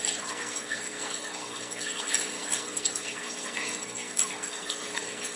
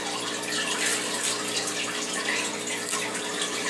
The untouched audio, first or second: second